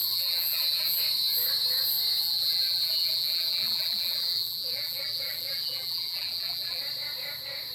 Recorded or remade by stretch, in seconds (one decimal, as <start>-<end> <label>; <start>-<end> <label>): 0.0-1.0 remade; 1.0-2.2 recorded; 2.2-6.8 remade; 6.8-7.7 recorded